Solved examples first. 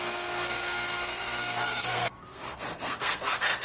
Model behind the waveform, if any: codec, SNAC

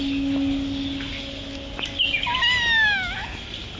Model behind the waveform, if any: none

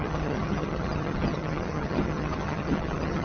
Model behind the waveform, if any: vocoder, HiFi-GAN